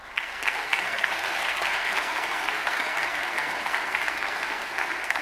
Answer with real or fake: fake